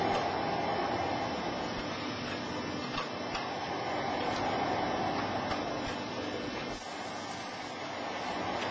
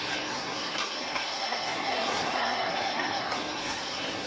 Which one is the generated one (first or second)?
second